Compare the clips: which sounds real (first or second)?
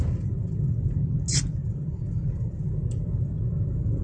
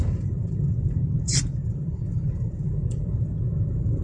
first